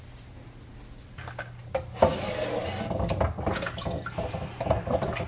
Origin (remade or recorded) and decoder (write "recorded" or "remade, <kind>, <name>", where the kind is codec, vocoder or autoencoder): recorded